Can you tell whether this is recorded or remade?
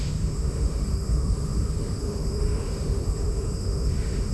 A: remade